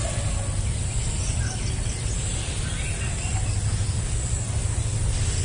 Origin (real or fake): real